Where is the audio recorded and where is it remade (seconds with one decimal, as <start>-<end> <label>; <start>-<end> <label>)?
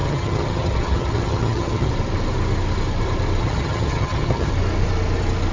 0.0-1.9 remade; 1.9-3.4 recorded; 3.4-4.5 remade; 4.5-5.5 recorded